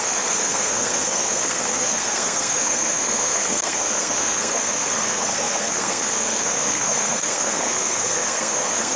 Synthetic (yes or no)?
yes